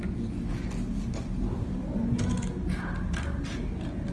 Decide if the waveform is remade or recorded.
recorded